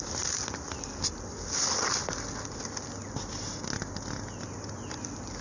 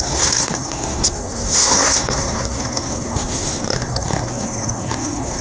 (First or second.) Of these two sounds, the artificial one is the second